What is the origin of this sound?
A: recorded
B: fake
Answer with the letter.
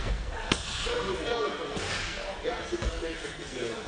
B